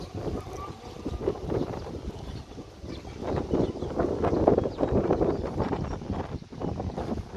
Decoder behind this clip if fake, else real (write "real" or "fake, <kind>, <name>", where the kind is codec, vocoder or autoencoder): real